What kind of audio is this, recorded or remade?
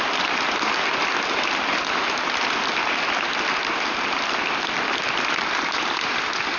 recorded